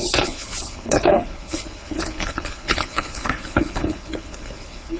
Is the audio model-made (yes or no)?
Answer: yes